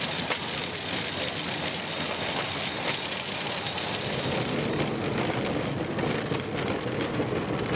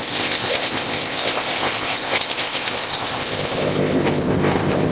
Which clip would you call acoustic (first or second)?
first